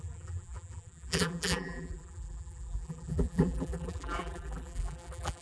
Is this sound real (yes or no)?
no